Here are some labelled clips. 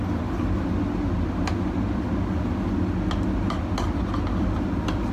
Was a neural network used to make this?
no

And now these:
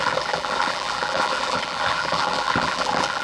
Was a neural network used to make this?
yes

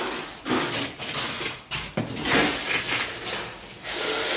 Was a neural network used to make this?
no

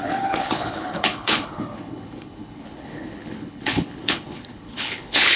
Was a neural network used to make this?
yes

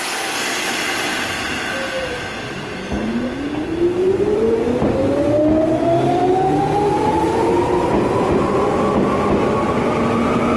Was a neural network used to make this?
no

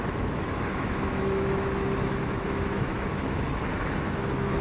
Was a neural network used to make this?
yes